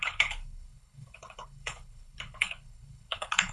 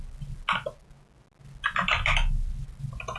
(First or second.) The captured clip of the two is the second